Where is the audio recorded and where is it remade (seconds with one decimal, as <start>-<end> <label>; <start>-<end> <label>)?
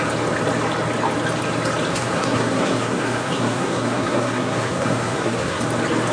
0.0-1.9 recorded; 1.9-5.6 remade; 5.6-6.1 recorded